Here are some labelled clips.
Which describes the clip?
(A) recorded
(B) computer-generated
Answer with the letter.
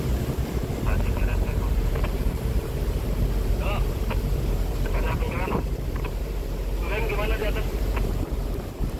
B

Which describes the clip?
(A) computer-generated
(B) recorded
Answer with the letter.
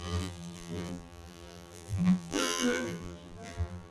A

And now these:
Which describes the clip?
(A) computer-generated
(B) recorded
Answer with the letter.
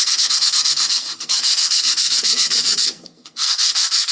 A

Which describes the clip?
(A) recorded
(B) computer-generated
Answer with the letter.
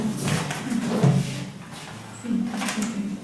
A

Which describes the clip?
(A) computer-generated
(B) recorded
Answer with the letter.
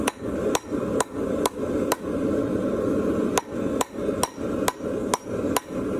B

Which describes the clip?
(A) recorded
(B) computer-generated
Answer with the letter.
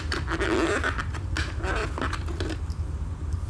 A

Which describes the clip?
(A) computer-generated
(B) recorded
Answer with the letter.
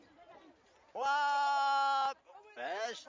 B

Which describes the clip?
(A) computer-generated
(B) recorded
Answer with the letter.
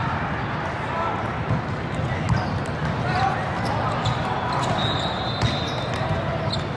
B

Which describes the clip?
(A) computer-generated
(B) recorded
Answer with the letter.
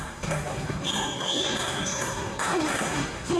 A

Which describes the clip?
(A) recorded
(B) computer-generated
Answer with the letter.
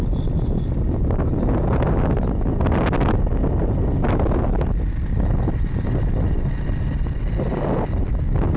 A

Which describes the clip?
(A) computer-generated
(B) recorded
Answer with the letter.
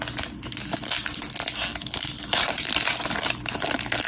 B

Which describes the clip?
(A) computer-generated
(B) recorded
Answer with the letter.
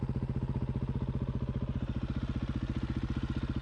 B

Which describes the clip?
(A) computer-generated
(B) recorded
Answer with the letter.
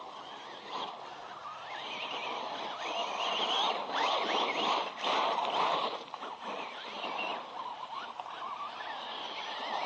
B